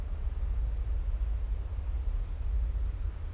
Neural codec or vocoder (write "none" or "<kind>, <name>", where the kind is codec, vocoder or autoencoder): none